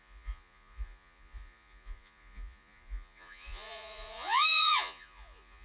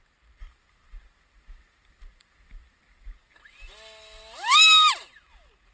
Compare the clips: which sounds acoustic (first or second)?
second